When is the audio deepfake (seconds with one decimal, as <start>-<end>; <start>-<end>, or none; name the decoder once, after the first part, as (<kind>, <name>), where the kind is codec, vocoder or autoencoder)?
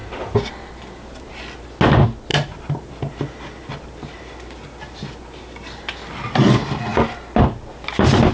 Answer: 2.3-2.9 (vocoder, BigVGAN v2)